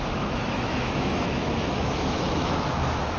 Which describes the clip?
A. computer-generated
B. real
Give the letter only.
A